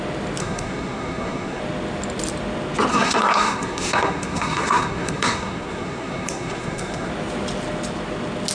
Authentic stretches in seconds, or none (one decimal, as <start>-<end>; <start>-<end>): 0.0-0.4; 1.6-2.9; 7.1-8.5